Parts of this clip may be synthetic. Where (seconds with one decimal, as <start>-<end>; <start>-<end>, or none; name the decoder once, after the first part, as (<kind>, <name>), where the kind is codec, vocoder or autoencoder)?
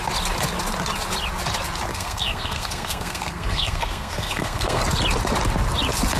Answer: 1.9-4.8 (codec, SNAC)